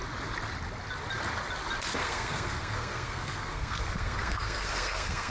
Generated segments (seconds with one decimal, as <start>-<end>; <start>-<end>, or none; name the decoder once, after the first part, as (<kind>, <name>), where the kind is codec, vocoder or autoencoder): 2.0-5.3 (codec, SNAC)